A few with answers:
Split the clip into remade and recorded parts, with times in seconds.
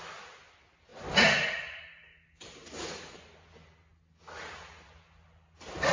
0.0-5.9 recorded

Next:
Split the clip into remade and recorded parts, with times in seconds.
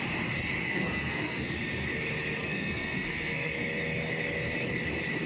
0.0-0.6 recorded; 0.6-1.5 remade; 1.5-2.4 recorded; 2.4-3.5 remade; 3.5-5.3 recorded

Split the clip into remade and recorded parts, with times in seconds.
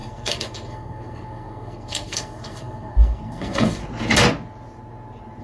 0.0-3.8 remade; 3.8-5.4 recorded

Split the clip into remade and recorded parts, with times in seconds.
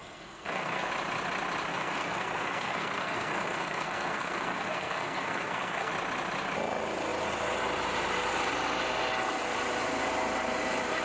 0.0-0.9 remade; 0.9-1.7 recorded; 1.7-5.9 remade; 5.9-11.0 recorded